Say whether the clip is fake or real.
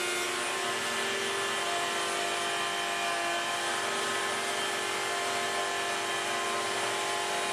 real